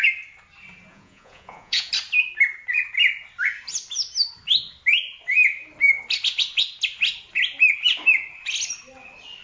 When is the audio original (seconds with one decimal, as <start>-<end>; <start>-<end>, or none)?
0.0-0.9; 1.9-9.4